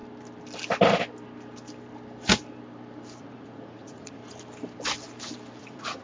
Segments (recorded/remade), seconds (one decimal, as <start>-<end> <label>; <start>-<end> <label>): 0.0-3.2 recorded; 3.2-4.2 remade; 4.2-5.6 recorded; 5.6-6.0 remade